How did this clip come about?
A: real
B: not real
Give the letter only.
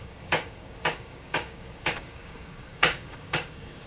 B